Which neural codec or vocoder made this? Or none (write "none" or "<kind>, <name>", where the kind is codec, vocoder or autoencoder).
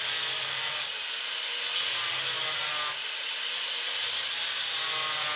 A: none